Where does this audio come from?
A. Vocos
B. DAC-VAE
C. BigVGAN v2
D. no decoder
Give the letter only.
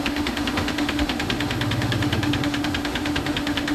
B